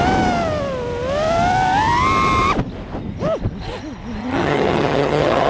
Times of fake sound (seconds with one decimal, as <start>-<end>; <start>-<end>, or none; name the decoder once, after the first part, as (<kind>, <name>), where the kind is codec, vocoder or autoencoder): 4.2-5.5 (vocoder, HiFi-GAN)